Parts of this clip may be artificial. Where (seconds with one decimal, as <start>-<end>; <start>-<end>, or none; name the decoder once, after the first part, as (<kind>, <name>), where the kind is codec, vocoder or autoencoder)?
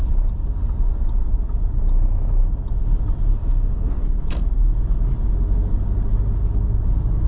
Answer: 3.3-4.0 (autoencoder, DAC-VAE)